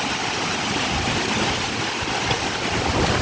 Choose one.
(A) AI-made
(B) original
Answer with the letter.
B